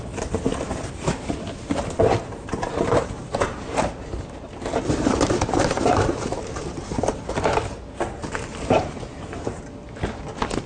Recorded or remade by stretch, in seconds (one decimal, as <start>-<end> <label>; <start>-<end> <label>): 0.0-0.5 recorded; 0.5-1.1 remade; 1.1-2.2 recorded; 2.2-7.2 remade; 7.2-8.5 recorded; 8.5-9.6 remade; 9.6-10.7 recorded